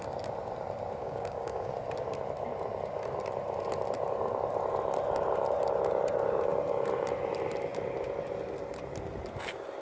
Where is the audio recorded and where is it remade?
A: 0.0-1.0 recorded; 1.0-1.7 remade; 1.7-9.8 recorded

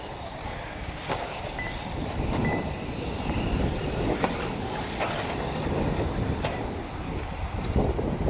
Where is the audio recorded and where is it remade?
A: 0.0-0.4 recorded; 0.4-1.4 remade; 1.4-8.3 recorded